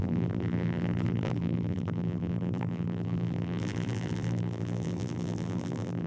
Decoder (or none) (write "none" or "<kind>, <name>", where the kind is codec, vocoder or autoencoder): vocoder, BigVGAN v2